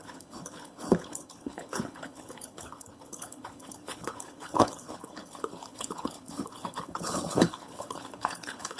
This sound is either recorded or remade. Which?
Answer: remade